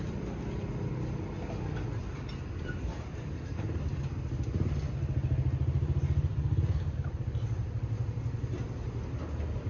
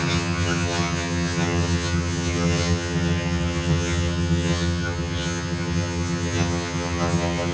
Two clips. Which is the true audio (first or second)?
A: first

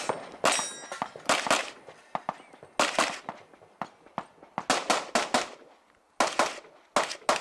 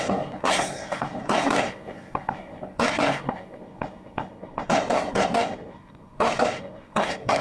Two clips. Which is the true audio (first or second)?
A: first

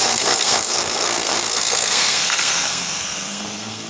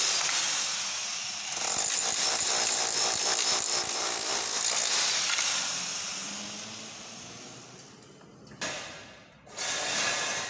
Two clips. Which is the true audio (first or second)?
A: second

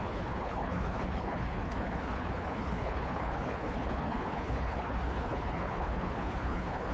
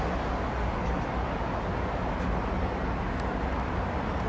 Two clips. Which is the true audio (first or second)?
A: second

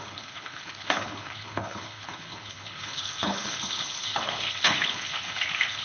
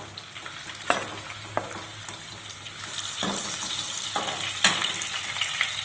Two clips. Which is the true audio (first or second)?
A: second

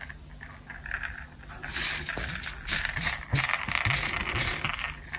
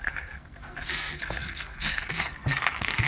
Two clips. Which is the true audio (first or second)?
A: first